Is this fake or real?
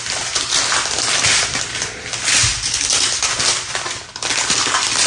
real